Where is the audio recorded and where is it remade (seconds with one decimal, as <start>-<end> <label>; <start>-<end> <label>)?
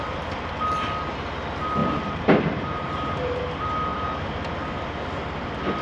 0.0-1.8 recorded; 1.8-3.4 remade; 3.4-3.9 recorded; 3.9-4.5 remade; 4.5-5.8 recorded